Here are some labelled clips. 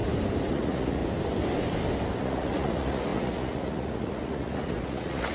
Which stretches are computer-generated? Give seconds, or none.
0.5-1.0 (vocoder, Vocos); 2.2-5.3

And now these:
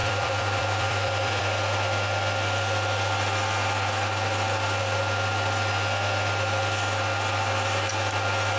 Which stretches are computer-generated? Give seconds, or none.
0.0-1.4 (vocoder, BigVGAN v2)

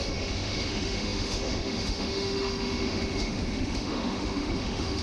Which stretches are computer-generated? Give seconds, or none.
0.0-5.0 (autoencoder, DAC-VAE)